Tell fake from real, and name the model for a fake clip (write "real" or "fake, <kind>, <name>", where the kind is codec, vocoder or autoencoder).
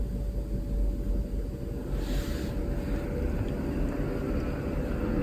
real